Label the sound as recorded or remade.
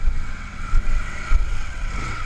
remade